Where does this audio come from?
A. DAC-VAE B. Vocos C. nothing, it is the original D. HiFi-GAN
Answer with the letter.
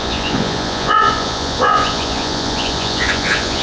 B